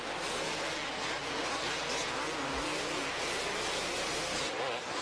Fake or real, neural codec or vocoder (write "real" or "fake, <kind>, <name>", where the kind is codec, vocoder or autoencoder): real